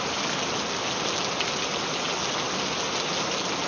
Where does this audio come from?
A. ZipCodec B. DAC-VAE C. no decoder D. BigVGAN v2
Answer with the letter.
C